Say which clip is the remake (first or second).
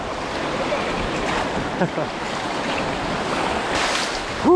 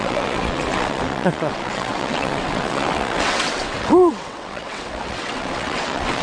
second